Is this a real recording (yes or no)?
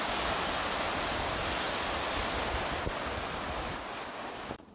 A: yes